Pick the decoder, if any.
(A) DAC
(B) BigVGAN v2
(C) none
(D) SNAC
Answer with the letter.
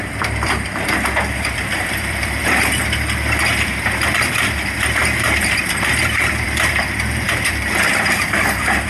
B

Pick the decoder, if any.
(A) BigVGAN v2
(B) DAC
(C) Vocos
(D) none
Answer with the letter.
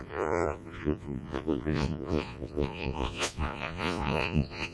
C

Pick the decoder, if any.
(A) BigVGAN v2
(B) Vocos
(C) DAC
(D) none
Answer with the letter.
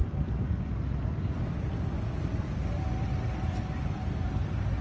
D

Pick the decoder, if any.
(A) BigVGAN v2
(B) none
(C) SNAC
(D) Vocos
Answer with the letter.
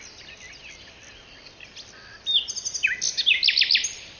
B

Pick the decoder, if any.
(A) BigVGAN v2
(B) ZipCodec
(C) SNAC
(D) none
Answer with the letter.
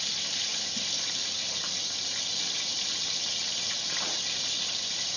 D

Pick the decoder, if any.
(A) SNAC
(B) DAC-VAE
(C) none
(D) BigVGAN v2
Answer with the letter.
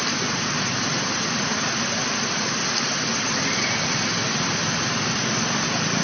C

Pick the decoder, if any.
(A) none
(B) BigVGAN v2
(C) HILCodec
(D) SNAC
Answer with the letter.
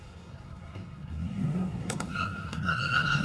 D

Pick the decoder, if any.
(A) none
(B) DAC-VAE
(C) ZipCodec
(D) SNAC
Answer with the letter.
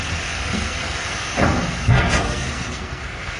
D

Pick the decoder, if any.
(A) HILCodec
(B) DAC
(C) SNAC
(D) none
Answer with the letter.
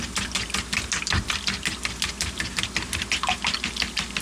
D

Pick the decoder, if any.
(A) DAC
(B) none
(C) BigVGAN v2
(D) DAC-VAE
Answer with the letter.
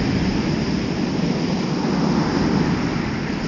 B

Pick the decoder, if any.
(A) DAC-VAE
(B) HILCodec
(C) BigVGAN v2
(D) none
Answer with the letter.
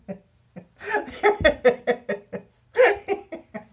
D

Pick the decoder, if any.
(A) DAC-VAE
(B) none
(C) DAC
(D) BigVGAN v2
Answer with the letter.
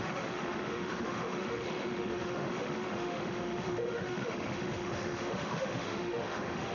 A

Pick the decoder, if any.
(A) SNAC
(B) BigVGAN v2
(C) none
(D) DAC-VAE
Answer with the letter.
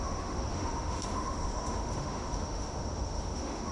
D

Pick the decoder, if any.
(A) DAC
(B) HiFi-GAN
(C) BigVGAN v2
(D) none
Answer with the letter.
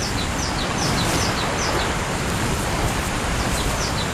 C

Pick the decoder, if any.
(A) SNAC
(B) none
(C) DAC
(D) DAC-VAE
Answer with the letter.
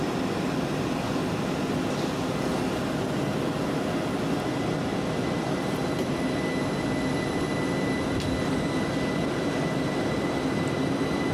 B